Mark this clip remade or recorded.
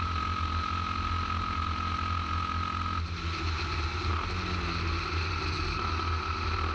recorded